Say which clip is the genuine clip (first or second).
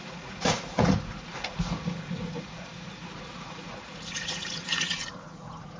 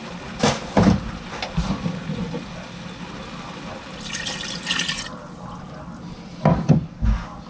second